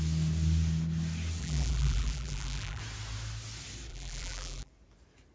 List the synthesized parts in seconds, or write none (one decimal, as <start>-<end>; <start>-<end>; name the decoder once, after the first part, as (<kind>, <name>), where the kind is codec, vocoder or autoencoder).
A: 1.4-2.8 (vocoder, BigVGAN v2); 3.9-4.7